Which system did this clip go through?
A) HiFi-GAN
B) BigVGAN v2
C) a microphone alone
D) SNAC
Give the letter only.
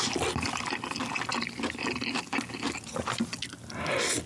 C